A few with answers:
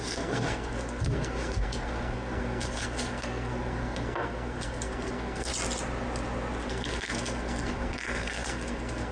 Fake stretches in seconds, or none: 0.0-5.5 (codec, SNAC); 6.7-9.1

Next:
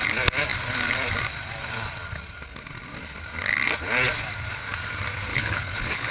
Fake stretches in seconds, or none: 5.3-6.1 (codec, HILCodec)

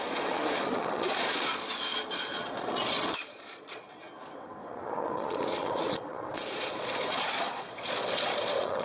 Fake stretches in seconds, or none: 0.0-4.0 (vocoder, Vocos); 4.7-8.8

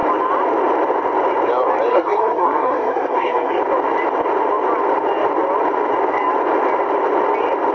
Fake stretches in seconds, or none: 1.9-3.6 (codec, SNAC)

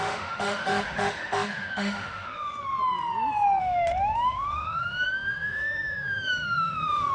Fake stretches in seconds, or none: 0.0-2.7 (autoencoder, DAC-VAE); 3.6-7.1

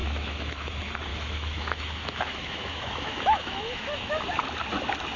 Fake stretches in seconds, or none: 0.0-0.7 (autoencoder, DAC-VAE); 1.1-4.2

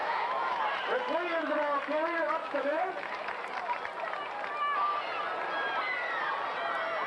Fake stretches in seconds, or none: 0.0-0.6 (autoencoder, DAC-VAE); 2.4-2.9